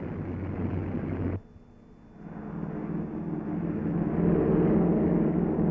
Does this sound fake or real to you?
real